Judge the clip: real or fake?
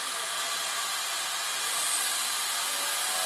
real